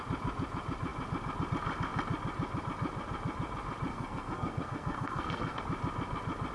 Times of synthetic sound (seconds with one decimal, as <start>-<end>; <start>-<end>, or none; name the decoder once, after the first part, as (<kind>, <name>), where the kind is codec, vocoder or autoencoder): 3.9-5.6 (codec, SNAC)